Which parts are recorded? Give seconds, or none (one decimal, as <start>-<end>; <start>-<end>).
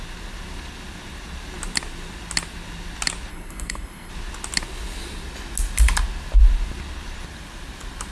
0.0-3.3; 4.1-8.1